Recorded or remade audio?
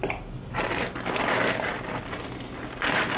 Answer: recorded